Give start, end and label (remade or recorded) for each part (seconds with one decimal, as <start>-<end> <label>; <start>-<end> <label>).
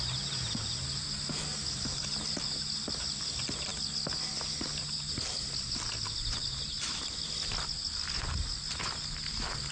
0.0-9.7 recorded